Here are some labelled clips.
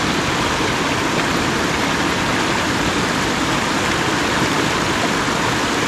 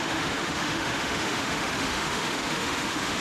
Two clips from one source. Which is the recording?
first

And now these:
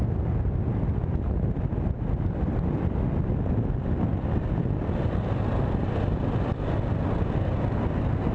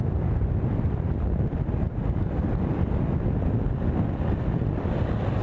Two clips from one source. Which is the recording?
first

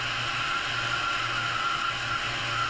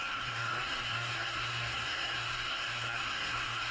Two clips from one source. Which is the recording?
first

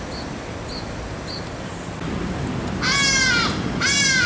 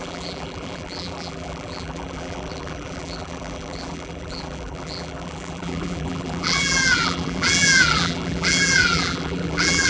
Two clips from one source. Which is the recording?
first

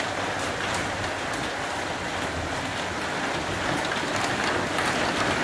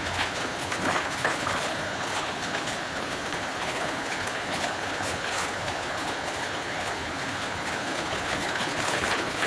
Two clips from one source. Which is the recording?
first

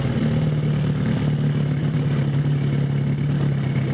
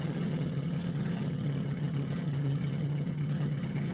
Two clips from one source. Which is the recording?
first